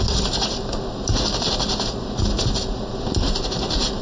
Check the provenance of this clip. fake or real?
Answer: real